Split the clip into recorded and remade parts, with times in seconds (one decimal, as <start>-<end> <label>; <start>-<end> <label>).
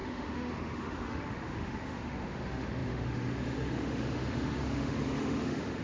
0.0-5.8 remade